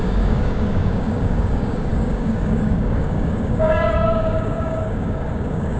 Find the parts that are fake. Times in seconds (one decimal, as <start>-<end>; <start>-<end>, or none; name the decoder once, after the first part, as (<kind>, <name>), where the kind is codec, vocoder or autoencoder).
0.0-5.8 (codec, DAC)